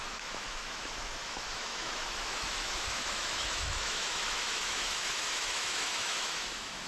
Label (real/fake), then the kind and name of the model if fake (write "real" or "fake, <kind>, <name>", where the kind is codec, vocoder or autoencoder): fake, autoencoder, DAC-VAE